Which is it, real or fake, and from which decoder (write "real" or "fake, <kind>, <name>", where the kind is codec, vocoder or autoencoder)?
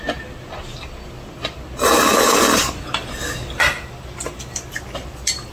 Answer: real